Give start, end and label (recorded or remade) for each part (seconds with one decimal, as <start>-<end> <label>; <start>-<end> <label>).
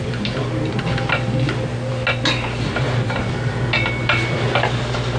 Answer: 0.0-5.2 recorded